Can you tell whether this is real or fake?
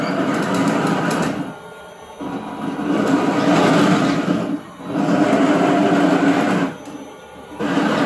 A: real